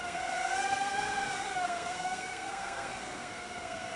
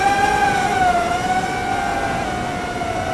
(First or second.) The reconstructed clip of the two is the first